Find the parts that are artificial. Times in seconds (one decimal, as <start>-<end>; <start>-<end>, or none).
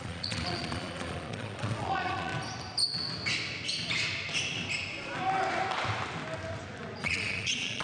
0.0-2.3; 7.0-7.8